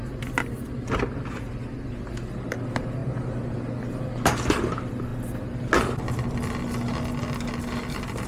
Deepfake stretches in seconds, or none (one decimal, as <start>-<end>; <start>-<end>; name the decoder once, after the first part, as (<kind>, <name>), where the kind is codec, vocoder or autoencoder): none